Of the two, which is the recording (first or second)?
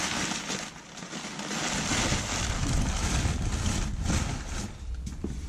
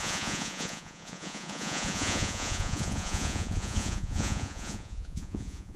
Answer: first